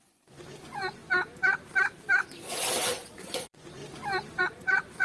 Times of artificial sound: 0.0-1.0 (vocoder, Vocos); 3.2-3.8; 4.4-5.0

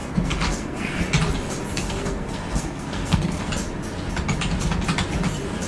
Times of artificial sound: 0.0-1.0 (codec, SNAC); 1.7-3.5